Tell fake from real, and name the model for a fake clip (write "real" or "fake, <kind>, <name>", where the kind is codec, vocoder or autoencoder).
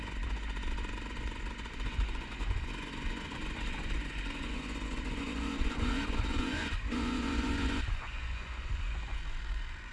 fake, vocoder, Vocos